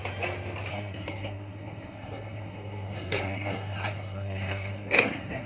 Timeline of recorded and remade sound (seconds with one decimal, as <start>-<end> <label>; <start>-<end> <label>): 0.0-0.7 recorded; 0.7-5.5 remade